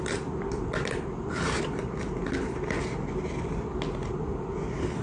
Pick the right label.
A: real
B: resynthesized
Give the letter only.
A